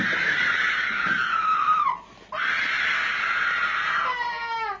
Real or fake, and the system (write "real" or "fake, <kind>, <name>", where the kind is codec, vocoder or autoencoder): real